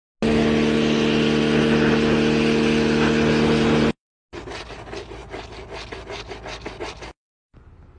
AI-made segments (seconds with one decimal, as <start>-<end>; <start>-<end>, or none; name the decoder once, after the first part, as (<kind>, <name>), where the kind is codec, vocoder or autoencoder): none